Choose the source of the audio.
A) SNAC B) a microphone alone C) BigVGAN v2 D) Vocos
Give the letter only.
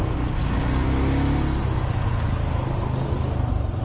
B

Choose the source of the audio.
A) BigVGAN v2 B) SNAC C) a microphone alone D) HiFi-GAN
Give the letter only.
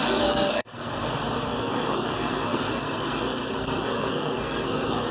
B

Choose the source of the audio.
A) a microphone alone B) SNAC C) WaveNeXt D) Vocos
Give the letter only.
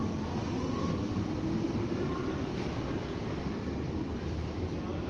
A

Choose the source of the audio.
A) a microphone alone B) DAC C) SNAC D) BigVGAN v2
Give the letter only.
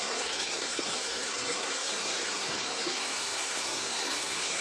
C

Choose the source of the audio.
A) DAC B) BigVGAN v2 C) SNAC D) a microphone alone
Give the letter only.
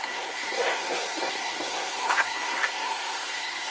C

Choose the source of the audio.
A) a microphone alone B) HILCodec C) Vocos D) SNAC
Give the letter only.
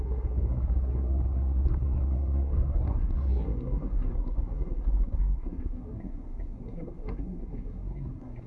D